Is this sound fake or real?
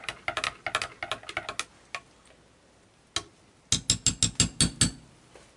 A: real